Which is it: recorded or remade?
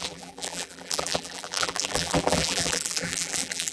remade